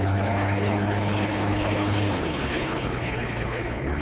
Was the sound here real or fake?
fake